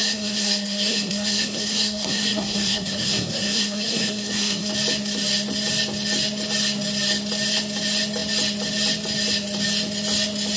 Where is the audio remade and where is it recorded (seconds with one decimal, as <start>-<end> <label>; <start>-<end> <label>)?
0.0-4.7 remade; 4.7-10.6 recorded